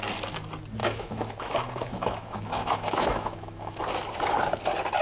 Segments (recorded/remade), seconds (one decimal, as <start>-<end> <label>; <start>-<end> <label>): 0.0-0.8 recorded; 0.8-3.8 remade; 3.8-5.0 recorded